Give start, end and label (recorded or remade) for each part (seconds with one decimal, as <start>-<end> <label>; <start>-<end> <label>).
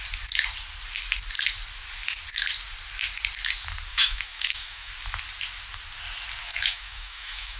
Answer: 0.0-3.9 recorded; 3.9-4.9 remade; 4.9-6.4 recorded; 6.4-7.6 remade